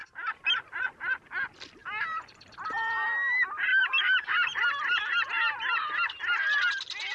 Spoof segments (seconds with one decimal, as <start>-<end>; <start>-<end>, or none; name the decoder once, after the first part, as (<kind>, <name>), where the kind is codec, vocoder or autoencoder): 0.0-1.0 (vocoder, BigVGAN v2); 1.8-2.5; 3.7-5.1